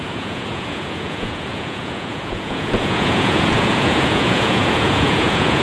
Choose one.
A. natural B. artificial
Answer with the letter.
B